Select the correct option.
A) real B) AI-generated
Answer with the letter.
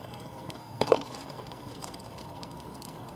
B